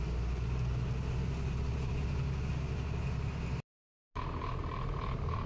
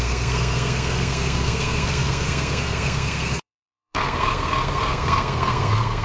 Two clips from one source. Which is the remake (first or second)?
second